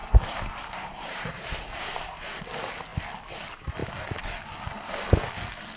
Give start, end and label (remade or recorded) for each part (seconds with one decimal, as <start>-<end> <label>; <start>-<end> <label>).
0.0-2.4 remade; 2.4-5.8 recorded